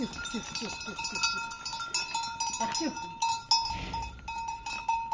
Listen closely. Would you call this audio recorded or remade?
recorded